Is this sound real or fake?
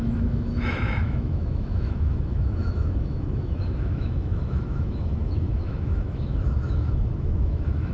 fake